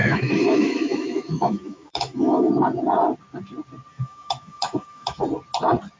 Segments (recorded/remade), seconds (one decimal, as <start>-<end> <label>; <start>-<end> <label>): 0.0-2.5 remade; 2.5-3.9 recorded; 3.9-5.2 remade; 5.2-6.0 recorded

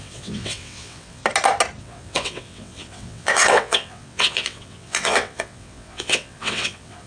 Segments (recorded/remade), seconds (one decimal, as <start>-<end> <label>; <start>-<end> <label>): 0.0-1.2 remade; 1.2-1.8 recorded; 1.8-7.1 remade

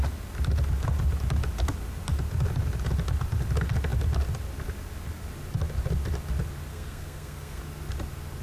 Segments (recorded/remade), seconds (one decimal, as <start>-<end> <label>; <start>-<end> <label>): 0.0-6.7 recorded; 6.7-7.6 remade; 7.6-8.4 recorded

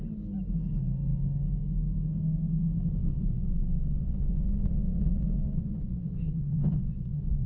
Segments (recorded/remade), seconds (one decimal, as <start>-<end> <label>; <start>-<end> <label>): 0.0-3.0 recorded; 3.0-7.5 remade

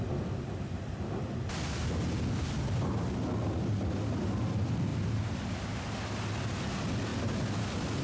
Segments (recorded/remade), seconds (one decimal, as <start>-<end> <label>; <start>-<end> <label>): 0.0-8.0 recorded

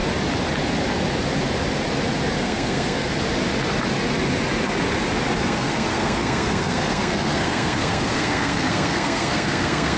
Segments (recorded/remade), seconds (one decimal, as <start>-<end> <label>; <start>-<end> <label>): 0.0-2.4 recorded; 2.4-3.1 remade; 3.1-5.4 recorded; 5.4-10.0 remade

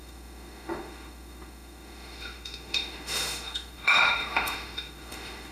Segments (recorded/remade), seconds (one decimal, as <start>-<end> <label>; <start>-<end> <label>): 0.0-5.5 remade